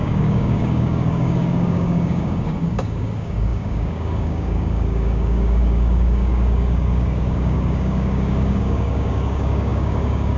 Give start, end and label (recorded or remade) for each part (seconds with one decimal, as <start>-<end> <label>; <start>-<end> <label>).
0.0-10.4 remade